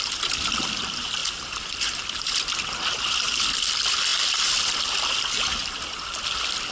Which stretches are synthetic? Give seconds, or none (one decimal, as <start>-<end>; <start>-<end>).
0.0-5.6